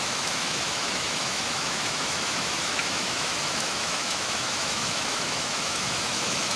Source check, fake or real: fake